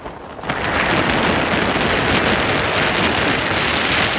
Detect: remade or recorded recorded